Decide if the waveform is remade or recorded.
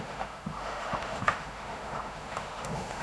remade